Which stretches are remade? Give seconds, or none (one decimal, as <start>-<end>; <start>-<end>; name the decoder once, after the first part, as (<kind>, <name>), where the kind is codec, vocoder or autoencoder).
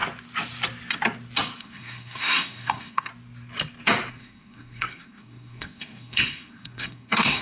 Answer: 1.6-3.1 (codec, SNAC); 4.1-7.4